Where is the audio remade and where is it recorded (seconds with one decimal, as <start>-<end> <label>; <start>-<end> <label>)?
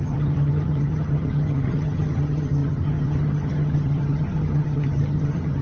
0.0-5.6 remade